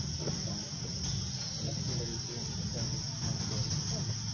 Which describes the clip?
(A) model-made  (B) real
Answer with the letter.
B